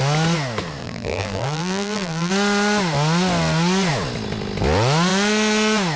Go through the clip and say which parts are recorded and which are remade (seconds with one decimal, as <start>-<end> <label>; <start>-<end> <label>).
0.0-0.8 recorded; 0.8-2.3 remade; 2.3-6.0 recorded